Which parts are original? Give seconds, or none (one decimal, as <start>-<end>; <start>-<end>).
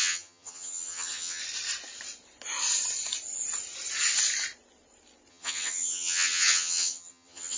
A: 1.4-5.3